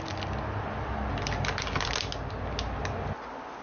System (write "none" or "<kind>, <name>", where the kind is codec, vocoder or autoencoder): none